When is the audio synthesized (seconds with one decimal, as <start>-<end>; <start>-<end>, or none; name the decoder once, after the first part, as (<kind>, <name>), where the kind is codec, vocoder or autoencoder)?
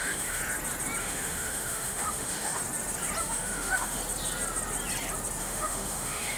0.0-0.4 (autoencoder, DAC-VAE); 1.0-2.6; 3.2-4.0; 5.4-6.4